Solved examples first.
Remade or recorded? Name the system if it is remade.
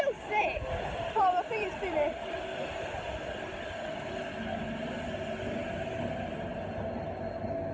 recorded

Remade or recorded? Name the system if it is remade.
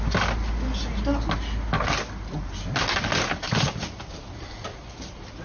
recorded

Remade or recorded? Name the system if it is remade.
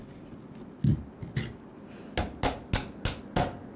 recorded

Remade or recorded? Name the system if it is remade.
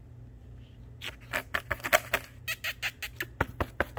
recorded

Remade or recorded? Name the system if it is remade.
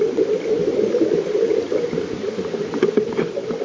recorded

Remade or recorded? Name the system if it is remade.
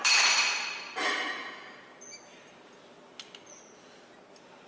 recorded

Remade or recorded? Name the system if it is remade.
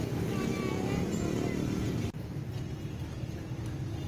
recorded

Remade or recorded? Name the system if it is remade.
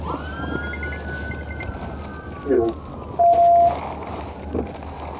recorded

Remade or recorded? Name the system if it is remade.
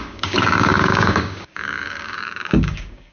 remade, codec, DAC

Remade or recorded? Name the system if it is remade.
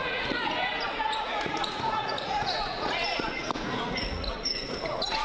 remade, vocoder, Vocos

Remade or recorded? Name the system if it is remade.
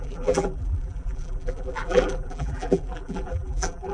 remade, vocoder, BigVGAN v2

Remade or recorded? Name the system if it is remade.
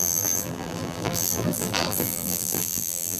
remade, vocoder, BigVGAN v2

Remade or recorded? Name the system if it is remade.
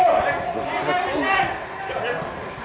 recorded